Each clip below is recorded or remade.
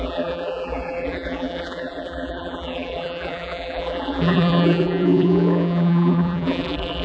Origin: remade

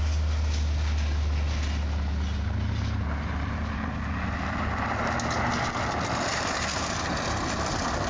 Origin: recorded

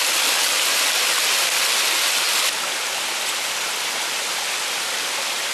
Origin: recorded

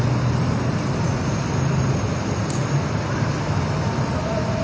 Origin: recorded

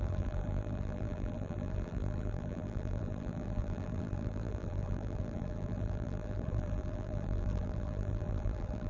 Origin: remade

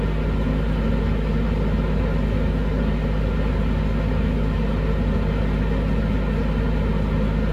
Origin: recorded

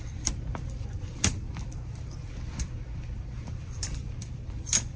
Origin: remade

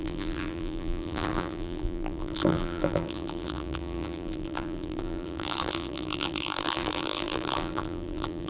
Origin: remade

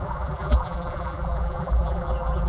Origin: remade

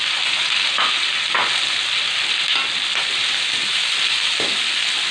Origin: recorded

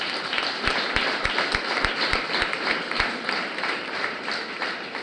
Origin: remade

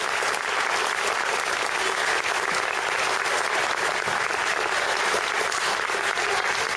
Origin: recorded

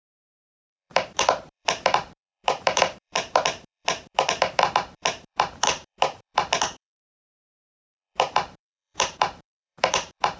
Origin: remade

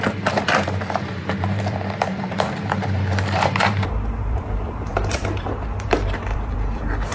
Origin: remade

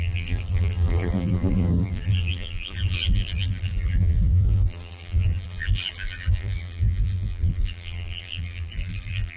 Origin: remade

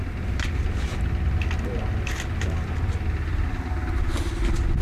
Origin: recorded